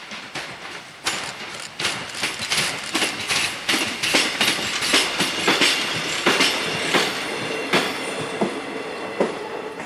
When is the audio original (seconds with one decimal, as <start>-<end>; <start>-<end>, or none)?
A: 0.0-9.9

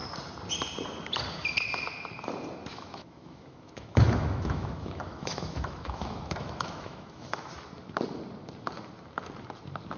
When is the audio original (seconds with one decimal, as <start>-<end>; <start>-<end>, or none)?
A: 0.0-2.7; 7.5-10.0

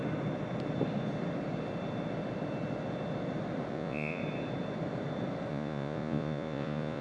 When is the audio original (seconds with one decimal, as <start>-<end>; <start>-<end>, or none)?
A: 0.0-3.7; 4.2-5.5

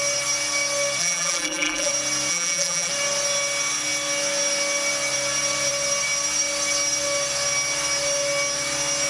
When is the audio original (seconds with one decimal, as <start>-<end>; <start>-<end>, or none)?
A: 0.0-1.0; 1.9-2.3; 2.9-9.1

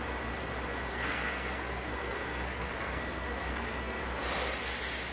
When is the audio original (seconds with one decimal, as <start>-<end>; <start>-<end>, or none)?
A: 0.0-0.9; 4.0-5.1